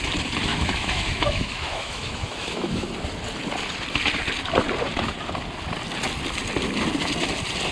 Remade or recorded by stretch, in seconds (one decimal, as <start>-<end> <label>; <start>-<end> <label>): 0.0-0.5 recorded; 0.5-2.9 remade; 2.9-7.7 recorded